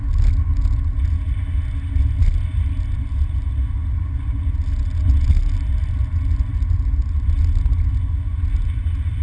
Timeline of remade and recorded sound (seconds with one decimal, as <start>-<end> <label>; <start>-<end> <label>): 0.0-9.2 recorded